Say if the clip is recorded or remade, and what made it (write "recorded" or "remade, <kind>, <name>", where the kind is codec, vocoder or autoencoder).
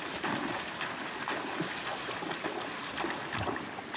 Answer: recorded